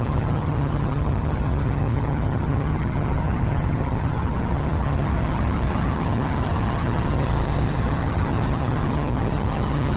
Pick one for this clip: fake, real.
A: fake